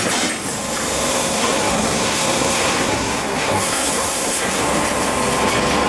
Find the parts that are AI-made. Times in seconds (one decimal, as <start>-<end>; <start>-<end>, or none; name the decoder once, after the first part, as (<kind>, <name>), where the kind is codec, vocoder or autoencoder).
1.1-4.6 (codec, SNAC)